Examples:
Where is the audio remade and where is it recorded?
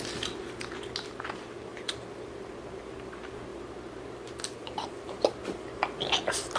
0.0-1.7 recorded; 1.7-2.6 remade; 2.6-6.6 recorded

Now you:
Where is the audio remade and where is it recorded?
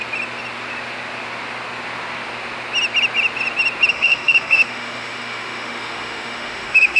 0.0-3.9 recorded; 3.9-7.0 remade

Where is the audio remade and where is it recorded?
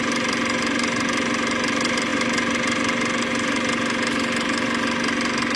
0.0-5.6 recorded